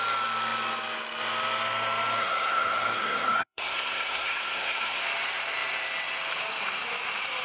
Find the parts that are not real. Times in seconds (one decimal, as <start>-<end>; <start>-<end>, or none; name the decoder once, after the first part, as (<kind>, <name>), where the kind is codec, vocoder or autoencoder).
2.2-5.0 (codec, SNAC)